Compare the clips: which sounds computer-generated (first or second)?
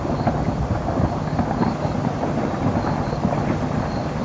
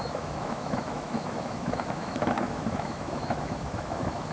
second